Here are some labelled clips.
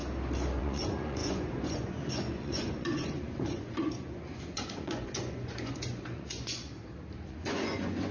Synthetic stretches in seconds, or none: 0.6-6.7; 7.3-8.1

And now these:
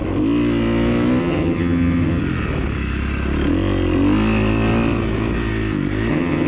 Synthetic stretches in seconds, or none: 1.2-2.2; 6.1-6.5